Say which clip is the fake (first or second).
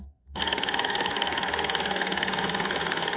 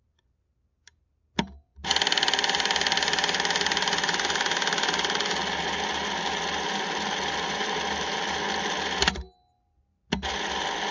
first